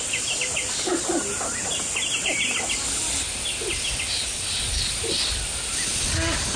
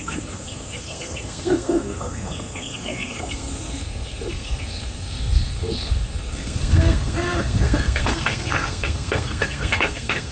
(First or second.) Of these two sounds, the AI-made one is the second